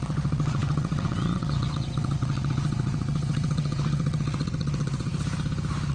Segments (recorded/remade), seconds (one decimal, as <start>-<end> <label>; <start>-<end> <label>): 0.0-5.1 remade; 5.1-5.9 recorded